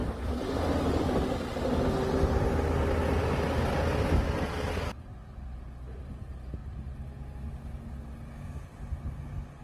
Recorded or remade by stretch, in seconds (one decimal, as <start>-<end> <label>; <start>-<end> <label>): 0.0-1.2 remade; 1.2-9.6 recorded